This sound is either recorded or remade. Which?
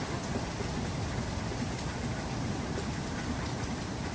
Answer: recorded